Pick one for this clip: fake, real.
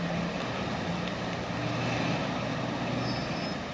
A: real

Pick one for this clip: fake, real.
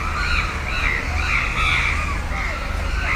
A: real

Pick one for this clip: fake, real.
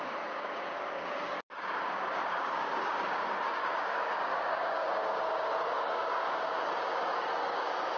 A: fake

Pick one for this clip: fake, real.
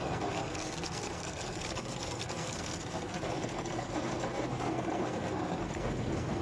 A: fake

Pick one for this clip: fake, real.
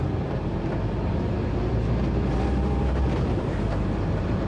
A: fake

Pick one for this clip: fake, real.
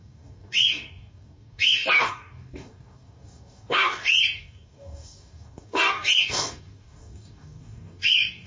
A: fake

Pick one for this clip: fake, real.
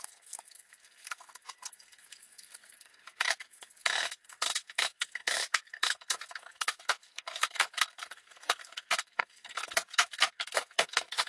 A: fake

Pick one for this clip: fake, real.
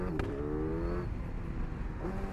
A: real